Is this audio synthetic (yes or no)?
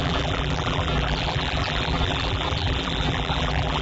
yes